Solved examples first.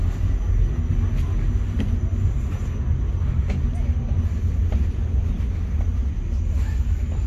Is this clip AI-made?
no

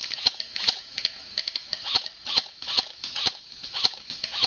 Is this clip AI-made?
yes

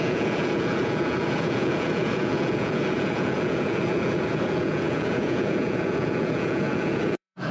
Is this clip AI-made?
yes